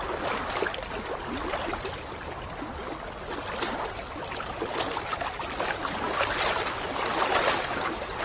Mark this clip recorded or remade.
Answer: recorded